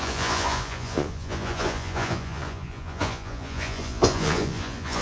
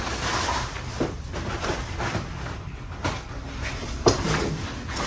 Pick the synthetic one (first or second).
first